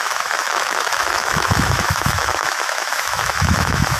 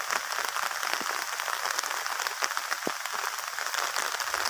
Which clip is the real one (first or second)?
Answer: second